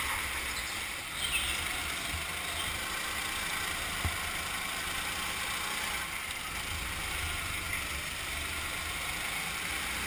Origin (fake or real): real